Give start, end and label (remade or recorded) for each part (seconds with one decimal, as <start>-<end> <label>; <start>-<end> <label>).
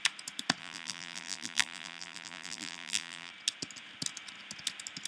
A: 0.0-0.6 recorded; 0.6-3.3 remade; 3.3-5.1 recorded